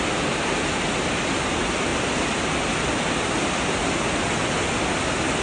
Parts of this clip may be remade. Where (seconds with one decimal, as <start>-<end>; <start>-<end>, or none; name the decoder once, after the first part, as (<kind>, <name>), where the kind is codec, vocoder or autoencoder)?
none